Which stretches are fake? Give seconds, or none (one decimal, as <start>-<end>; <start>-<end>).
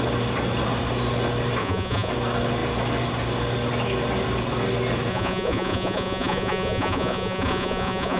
1.6-2.1; 5.1-8.2